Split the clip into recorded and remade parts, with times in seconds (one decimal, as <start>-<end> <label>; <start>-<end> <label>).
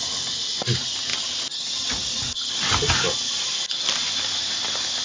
0.0-5.0 recorded